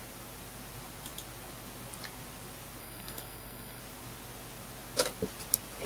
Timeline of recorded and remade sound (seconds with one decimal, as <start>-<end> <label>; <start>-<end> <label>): 0.0-2.8 recorded; 2.8-3.8 remade; 3.8-5.9 recorded